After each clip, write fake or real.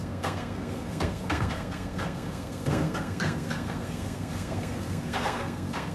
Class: fake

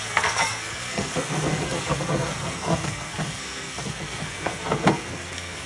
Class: fake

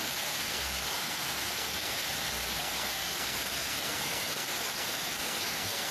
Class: fake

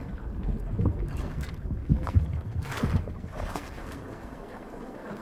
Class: fake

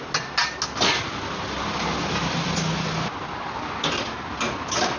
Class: real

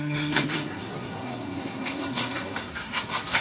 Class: fake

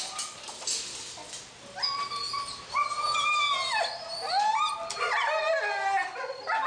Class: real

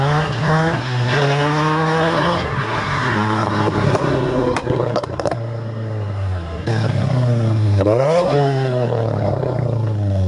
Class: fake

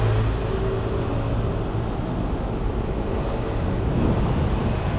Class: real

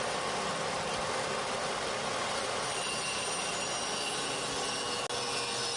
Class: real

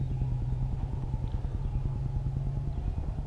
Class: real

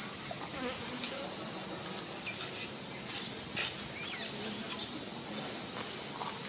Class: real